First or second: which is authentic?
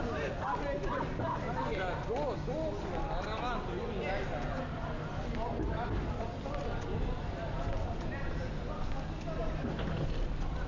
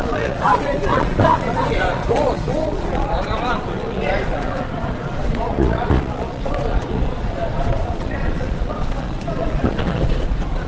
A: first